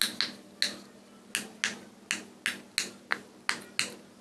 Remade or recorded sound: recorded